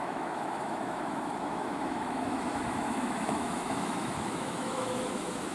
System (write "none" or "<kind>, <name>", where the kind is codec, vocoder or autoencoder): autoencoder, DAC-VAE